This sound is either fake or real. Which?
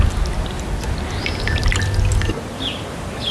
real